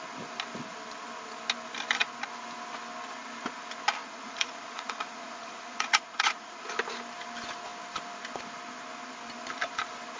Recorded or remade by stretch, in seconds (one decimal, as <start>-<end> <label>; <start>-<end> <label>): 0.0-4.0 recorded; 4.0-6.7 remade; 6.7-10.2 recorded